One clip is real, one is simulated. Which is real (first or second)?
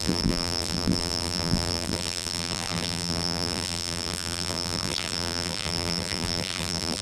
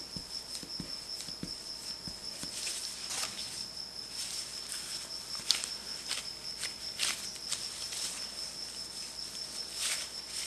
second